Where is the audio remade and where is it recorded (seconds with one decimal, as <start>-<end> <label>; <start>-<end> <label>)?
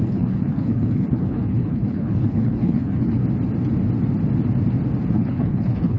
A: 0.0-3.2 remade; 3.2-5.1 recorded; 5.1-6.0 remade